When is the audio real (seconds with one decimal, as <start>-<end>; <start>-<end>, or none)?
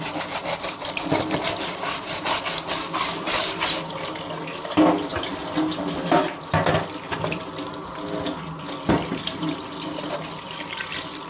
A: 0.0-11.3